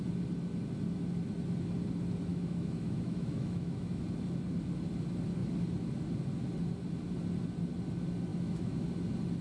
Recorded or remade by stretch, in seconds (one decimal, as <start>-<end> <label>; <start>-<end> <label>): 0.0-2.3 recorded; 2.3-4.0 remade; 4.0-8.3 recorded; 8.3-8.8 remade; 8.8-9.4 recorded